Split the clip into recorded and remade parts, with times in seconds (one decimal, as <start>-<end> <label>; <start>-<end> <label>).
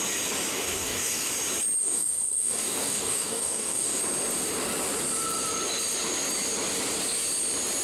0.0-0.5 recorded; 0.5-1.3 remade; 1.3-1.8 recorded; 1.8-4.0 remade; 4.0-7.8 recorded